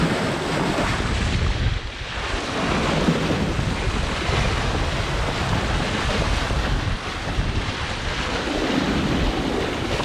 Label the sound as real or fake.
real